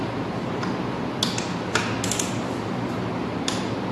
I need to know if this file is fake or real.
real